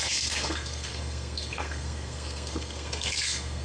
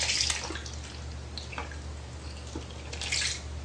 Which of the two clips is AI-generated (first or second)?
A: first